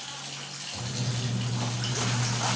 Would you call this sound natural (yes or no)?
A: yes